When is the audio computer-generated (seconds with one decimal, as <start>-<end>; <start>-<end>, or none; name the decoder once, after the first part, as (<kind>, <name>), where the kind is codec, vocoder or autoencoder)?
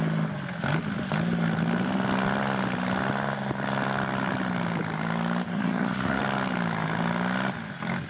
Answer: 5.5-6.2 (codec, SNAC)